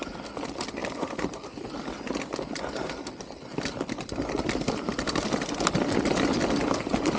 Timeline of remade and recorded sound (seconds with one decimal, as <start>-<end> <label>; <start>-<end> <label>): 0.0-7.2 recorded